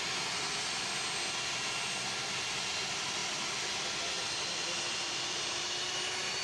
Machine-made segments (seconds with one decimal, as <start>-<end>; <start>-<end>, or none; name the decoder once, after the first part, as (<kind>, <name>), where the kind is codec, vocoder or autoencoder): none